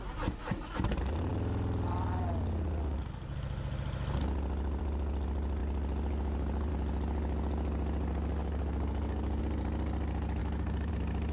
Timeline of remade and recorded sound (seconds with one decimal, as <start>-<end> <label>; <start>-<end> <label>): 0.0-8.4 recorded; 8.4-9.4 remade; 9.4-10.4 recorded; 10.4-10.9 remade; 10.9-11.3 recorded